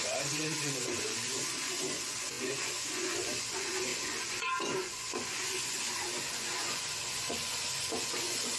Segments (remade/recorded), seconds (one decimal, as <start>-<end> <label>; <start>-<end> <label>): 0.0-8.6 remade